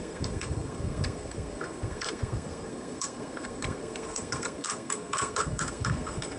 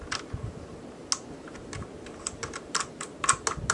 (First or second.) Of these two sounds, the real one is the second